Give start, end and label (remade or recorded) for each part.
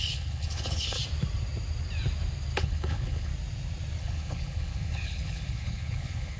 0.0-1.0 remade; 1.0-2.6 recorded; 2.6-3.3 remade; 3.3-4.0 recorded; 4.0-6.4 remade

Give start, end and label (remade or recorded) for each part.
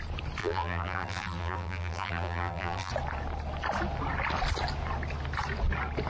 0.0-0.4 recorded; 0.4-2.9 remade; 2.9-6.1 recorded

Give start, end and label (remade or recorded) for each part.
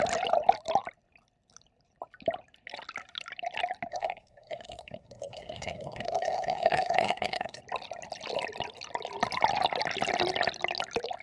0.0-3.9 recorded; 3.9-7.6 remade; 7.6-11.2 recorded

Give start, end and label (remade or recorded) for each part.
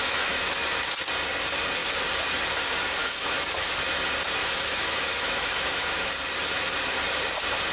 0.0-0.6 remade; 0.6-3.0 recorded; 3.0-3.7 remade; 3.7-4.4 recorded; 4.4-6.1 remade; 6.1-7.7 recorded